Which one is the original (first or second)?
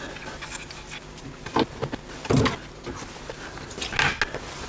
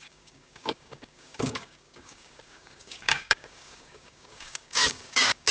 first